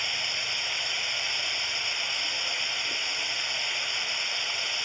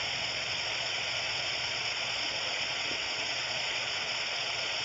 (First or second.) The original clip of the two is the first